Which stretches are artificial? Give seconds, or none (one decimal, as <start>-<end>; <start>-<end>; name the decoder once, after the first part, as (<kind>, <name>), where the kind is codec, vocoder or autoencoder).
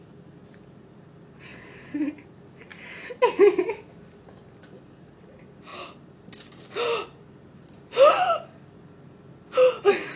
none